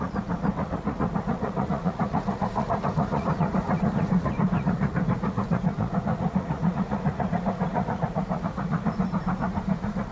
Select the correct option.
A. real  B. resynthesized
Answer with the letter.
B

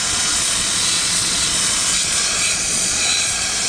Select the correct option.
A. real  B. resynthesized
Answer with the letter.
B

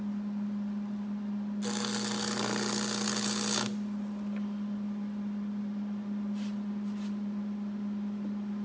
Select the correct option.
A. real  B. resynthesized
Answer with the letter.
A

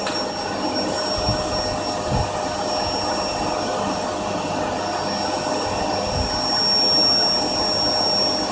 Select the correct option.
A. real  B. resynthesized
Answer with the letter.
A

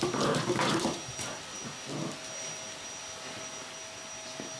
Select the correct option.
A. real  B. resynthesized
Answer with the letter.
A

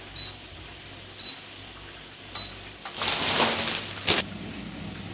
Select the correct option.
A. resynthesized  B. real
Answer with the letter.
B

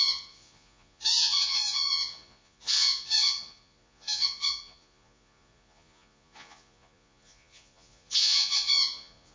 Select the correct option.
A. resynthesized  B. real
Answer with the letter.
A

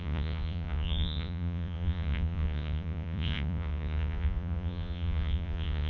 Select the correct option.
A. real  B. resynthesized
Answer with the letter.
B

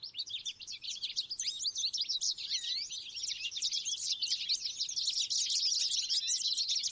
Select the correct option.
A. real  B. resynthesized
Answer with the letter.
A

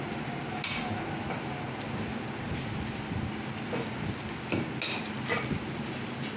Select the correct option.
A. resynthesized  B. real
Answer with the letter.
B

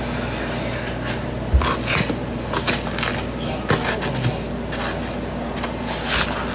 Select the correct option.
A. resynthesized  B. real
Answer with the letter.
B